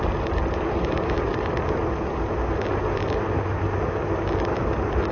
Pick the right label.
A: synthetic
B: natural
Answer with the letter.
B